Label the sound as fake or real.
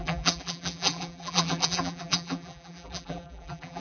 fake